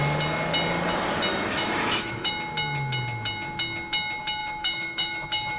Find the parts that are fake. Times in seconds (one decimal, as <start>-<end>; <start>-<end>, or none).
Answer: 1.3-2.3; 4.4-5.6